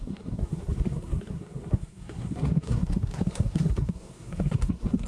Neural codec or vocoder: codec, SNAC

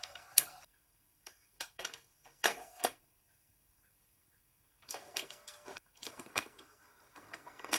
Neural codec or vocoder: codec, SNAC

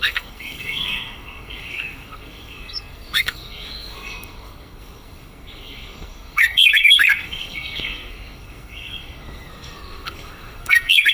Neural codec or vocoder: codec, SNAC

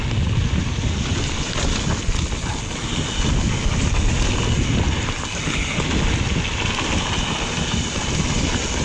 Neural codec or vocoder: none